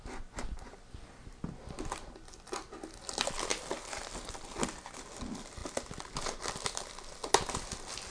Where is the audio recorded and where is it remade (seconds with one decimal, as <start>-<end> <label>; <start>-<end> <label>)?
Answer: 0.0-8.1 recorded